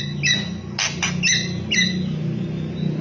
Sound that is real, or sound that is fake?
real